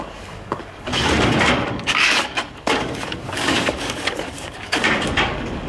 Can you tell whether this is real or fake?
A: fake